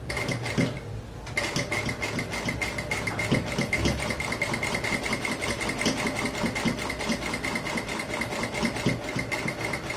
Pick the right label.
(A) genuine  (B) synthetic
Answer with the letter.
A